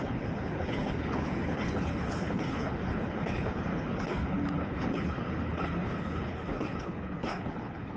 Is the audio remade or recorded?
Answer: remade